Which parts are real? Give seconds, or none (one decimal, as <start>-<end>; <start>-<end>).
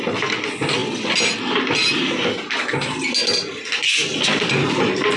0.0-5.2